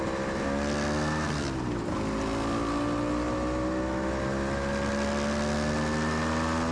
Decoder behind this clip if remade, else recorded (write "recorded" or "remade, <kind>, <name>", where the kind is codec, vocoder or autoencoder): recorded